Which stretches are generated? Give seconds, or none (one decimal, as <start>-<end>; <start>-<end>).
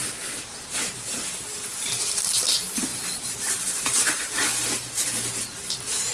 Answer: 0.0-6.1